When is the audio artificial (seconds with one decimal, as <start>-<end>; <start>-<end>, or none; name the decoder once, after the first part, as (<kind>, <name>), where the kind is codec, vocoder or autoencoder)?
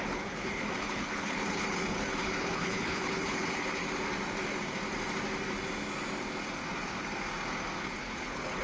0.0-3.8 (codec, HILCodec); 7.8-8.6